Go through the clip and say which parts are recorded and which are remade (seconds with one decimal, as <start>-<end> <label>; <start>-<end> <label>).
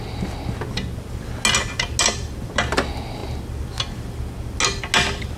0.0-5.4 recorded